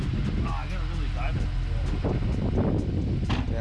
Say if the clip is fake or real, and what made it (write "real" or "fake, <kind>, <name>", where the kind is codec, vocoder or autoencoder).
real